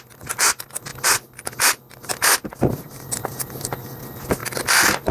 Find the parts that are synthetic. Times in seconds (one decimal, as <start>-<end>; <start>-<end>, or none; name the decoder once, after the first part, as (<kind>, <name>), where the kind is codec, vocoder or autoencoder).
0.9-4.0 (vocoder, BigVGAN v2)